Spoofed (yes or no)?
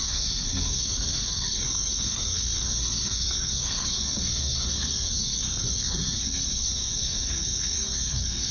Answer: yes